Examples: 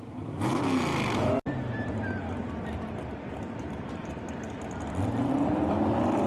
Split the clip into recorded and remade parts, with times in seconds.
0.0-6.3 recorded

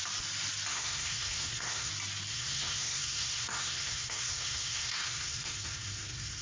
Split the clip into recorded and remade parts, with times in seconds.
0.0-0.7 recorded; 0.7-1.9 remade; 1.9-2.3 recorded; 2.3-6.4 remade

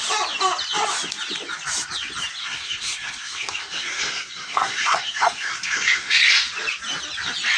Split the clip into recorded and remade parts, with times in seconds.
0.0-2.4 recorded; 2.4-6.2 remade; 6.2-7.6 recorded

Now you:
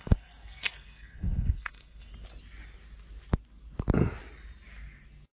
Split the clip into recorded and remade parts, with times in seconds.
0.0-2.1 remade; 2.1-5.4 recorded

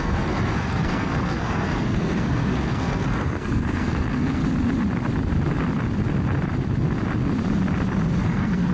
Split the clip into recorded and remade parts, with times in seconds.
0.0-4.4 remade; 4.4-8.2 recorded; 8.2-8.7 remade

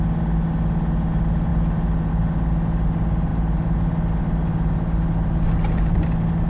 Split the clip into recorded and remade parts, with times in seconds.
0.0-6.5 recorded

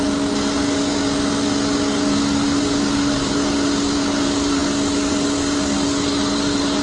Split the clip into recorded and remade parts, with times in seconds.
0.0-6.8 recorded

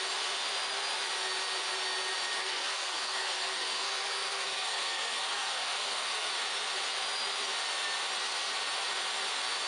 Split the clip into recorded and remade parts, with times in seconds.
0.0-2.4 recorded; 2.4-6.3 remade; 6.3-9.7 recorded